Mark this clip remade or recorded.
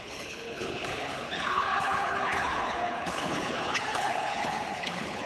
remade